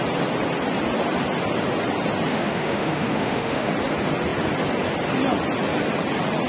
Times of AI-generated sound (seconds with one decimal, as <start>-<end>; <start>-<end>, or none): 2.3-3.7